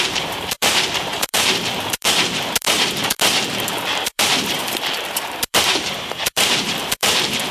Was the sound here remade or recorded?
remade